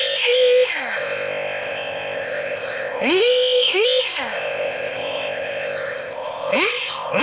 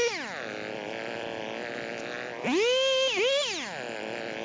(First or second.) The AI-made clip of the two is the first